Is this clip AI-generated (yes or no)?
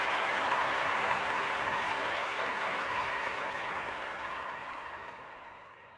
yes